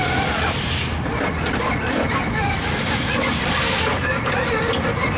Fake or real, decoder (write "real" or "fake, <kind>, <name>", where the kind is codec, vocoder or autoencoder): real